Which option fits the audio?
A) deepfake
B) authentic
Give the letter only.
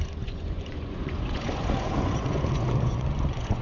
A